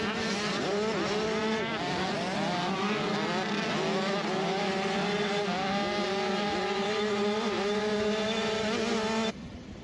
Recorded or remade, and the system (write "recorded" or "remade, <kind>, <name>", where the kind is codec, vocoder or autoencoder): recorded